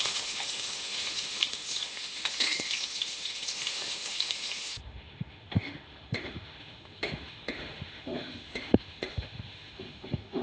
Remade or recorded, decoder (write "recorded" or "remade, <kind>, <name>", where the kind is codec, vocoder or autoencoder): remade, autoencoder, DAC-VAE